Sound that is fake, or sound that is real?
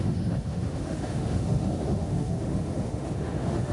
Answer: fake